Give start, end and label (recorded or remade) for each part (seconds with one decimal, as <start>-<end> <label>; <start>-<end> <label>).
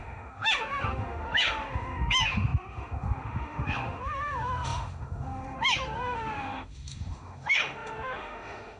0.0-8.8 remade